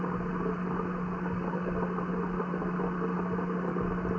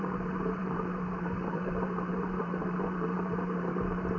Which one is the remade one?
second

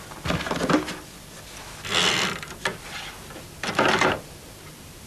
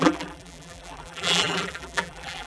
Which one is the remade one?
second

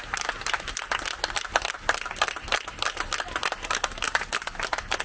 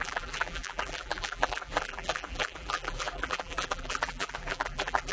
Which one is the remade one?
second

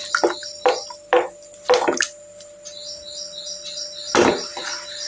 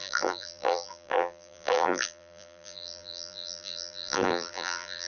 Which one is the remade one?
second